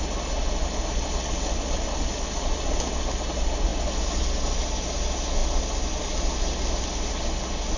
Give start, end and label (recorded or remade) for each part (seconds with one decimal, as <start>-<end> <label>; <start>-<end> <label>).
0.0-7.8 recorded